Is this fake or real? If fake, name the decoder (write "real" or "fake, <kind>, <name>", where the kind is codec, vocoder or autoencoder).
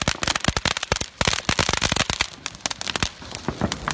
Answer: real